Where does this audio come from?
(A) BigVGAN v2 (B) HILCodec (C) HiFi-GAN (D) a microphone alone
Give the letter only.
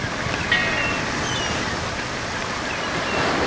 D